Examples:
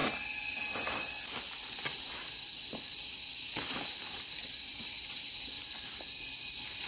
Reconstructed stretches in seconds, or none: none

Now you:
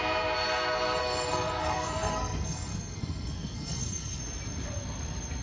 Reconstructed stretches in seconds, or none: 1.0-4.2 (codec, SNAC)

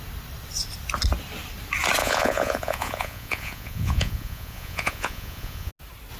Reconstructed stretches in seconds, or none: 2.0-5.7 (vocoder, Vocos)

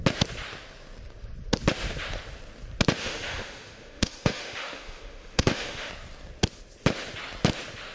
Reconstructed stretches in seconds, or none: 3.0-5.9 (autoencoder, DAC-VAE)

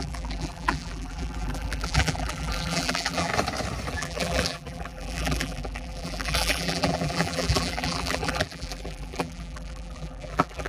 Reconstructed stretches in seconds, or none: 0.0-3.3 (vocoder, BigVGAN v2); 3.9-10.7

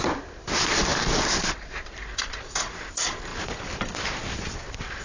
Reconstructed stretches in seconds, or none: none

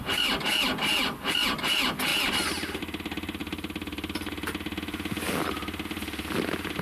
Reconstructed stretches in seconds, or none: none

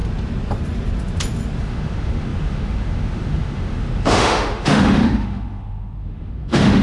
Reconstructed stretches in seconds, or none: 1.6-6.8 (autoencoder, DAC-VAE)